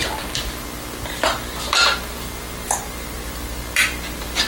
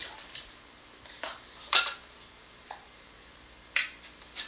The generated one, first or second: second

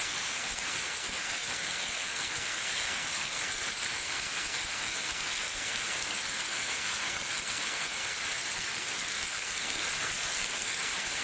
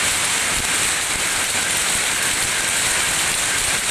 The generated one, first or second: first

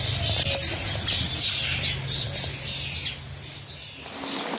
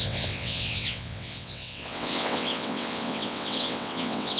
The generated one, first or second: second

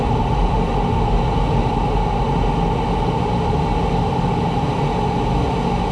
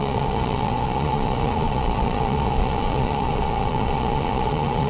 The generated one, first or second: second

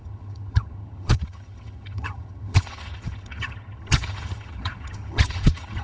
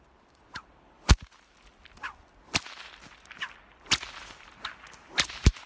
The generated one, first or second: first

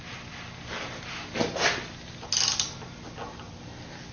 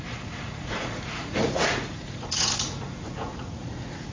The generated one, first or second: second